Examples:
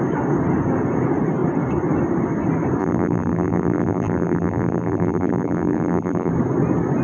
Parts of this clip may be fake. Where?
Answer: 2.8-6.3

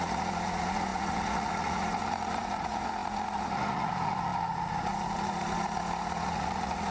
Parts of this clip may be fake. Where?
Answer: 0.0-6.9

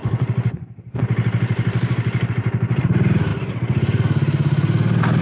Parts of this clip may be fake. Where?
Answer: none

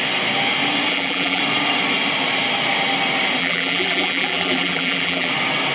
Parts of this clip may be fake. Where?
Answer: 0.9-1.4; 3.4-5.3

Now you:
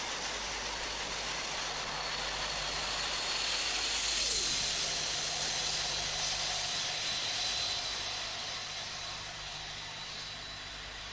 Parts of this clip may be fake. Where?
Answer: 8.6-9.6

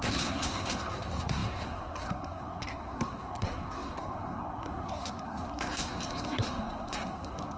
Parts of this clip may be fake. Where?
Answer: 0.0-7.6